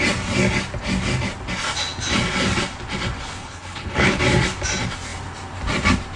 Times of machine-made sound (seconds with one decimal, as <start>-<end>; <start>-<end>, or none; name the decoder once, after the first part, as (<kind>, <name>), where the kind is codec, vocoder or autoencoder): 3.4-4.2 (codec, HILCodec)